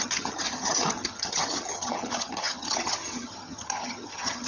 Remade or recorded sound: remade